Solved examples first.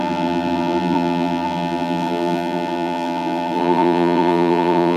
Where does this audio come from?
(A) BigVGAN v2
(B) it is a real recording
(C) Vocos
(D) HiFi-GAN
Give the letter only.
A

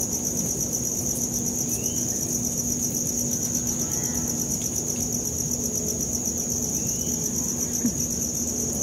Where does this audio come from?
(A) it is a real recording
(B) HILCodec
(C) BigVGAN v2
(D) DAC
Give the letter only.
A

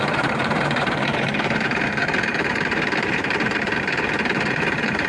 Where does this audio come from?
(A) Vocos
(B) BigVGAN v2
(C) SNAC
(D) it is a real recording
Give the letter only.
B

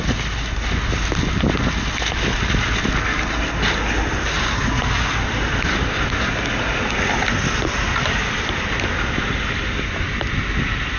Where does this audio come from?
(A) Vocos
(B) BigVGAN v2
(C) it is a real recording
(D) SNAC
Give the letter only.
C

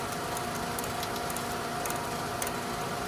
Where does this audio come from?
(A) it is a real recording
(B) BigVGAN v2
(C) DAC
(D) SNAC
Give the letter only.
A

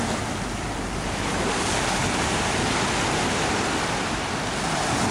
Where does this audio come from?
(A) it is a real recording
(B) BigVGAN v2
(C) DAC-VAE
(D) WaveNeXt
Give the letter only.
A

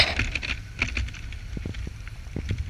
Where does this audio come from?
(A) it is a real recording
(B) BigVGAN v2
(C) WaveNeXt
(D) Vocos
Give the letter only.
A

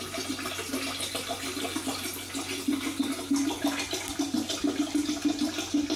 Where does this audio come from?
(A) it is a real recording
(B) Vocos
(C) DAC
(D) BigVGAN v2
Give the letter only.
A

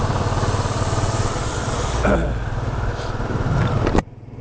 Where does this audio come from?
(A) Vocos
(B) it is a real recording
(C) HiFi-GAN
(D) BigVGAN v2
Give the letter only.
D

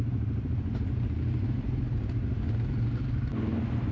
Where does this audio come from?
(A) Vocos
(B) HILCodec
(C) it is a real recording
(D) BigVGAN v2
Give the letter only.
C